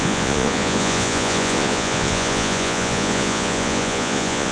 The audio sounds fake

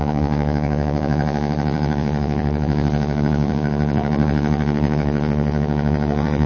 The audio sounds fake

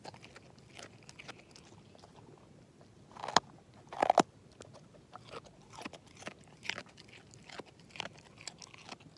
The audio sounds real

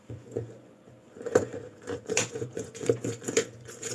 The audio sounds fake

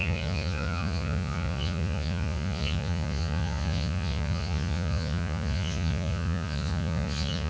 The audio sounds fake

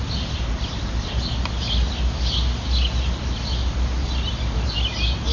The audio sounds real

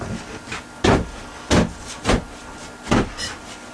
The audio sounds real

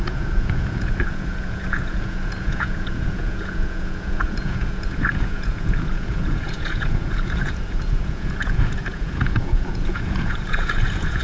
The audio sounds fake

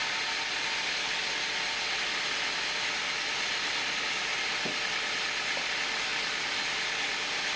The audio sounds real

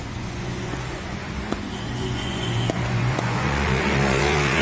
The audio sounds fake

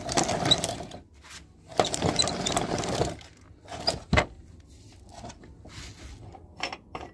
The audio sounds real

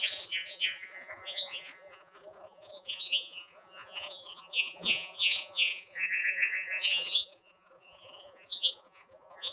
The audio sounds fake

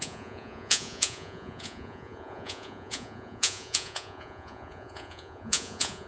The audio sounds fake